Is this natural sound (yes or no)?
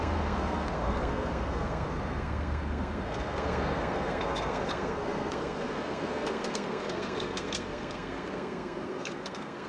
no